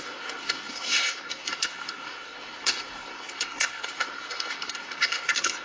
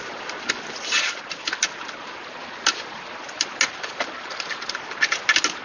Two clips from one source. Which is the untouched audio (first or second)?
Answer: second